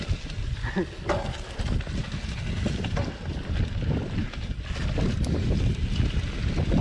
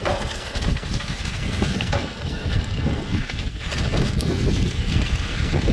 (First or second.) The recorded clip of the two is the first